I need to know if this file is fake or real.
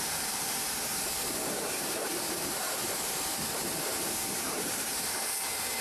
fake